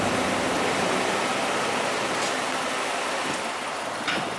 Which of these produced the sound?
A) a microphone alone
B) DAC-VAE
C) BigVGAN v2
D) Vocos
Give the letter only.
A